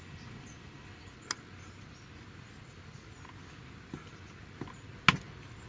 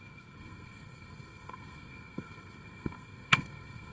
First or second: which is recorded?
first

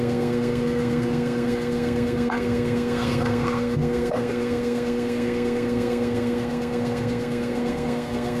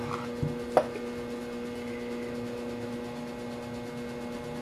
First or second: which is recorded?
second